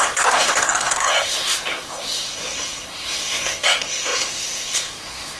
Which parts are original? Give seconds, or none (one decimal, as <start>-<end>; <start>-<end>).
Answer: none